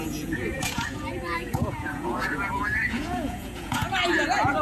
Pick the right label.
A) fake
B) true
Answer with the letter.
A